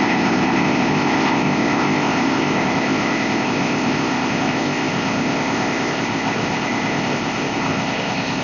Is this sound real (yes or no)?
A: no